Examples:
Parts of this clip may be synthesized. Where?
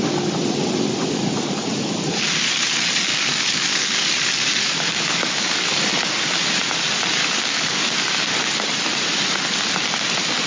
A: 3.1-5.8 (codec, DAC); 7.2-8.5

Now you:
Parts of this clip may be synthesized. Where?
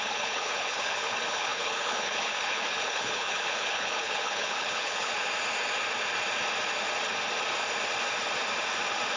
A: 0.0-5.1 (codec, HILCodec)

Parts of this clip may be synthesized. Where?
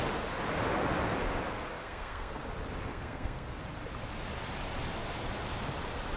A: 1.8-2.4 (codec, SNAC); 2.9-3.6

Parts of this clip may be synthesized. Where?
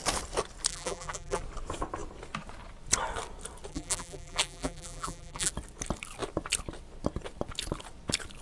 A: 0.7-1.4 (vocoder, BigVGAN v2); 3.7-5.5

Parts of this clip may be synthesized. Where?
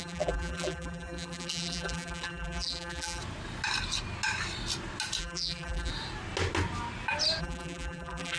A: 0.0-3.2 (vocoder, BigVGAN v2); 5.2-5.9; 7.4-8.4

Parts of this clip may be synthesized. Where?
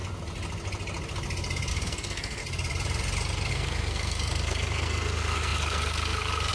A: 1.7-2.4 (codec, SNAC); 3.5-6.5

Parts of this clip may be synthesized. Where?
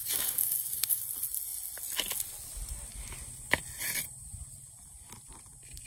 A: 0.0-1.0 (codec, DAC)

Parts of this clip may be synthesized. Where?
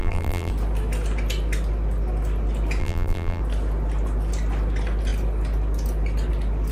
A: 0.0-0.5 (vocoder, BigVGAN v2); 2.8-3.4